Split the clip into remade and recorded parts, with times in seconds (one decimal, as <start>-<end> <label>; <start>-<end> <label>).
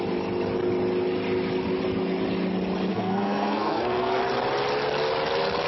0.0-2.9 recorded; 2.9-4.2 remade; 4.2-5.7 recorded